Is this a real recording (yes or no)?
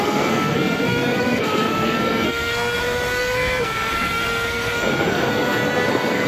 no